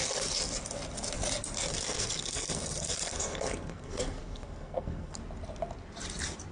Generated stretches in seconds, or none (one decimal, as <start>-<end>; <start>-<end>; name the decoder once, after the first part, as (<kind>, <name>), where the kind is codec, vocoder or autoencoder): 1.7-5.2 (codec, SNAC)